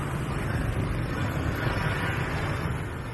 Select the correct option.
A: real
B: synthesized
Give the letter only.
A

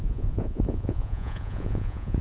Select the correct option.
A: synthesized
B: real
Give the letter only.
A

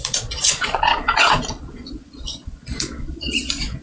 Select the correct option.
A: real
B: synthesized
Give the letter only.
B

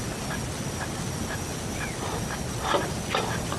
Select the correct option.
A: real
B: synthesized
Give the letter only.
A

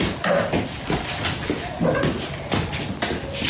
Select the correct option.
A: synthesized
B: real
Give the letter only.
B